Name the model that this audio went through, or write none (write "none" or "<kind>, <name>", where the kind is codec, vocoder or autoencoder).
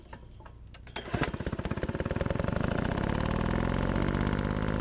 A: none